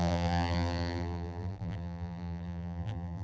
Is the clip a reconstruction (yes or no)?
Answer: yes